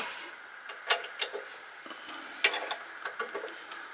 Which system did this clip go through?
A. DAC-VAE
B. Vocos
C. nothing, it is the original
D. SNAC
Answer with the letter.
C